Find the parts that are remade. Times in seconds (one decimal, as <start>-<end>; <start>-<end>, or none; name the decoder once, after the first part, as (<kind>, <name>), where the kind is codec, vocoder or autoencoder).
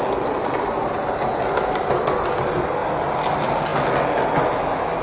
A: none